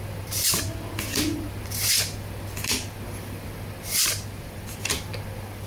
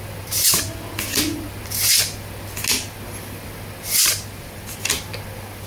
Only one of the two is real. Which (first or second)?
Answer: second